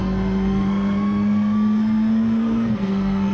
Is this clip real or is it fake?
fake